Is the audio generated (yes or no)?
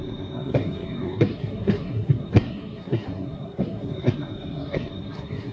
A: yes